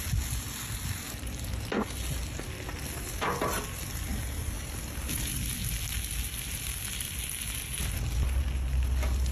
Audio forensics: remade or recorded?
recorded